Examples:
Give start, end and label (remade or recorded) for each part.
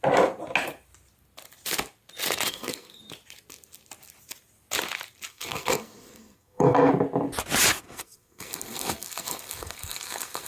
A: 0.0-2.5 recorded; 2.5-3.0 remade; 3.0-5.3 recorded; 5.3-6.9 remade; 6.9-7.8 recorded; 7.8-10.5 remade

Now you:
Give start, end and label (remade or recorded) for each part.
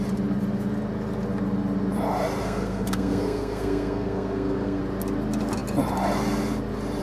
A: 0.0-2.4 recorded; 2.4-4.8 remade; 4.8-7.0 recorded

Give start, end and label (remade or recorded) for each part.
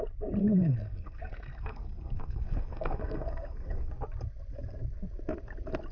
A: 0.0-0.4 recorded; 0.4-3.9 remade; 3.9-5.9 recorded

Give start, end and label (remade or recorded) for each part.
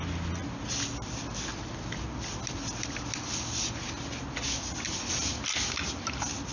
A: 0.0-6.5 recorded